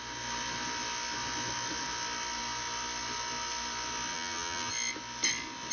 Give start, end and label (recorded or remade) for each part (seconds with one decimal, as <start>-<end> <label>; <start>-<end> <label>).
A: 0.0-4.1 recorded; 4.1-4.7 remade; 4.7-5.7 recorded